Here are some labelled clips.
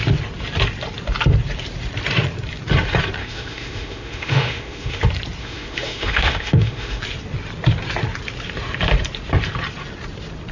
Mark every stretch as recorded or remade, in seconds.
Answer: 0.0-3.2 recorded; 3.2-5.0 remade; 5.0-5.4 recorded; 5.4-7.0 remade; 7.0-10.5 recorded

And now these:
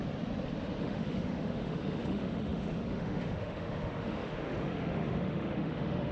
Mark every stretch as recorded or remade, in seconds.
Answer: 0.0-0.8 recorded; 0.8-6.1 remade